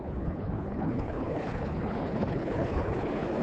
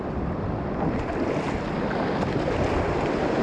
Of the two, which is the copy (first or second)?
first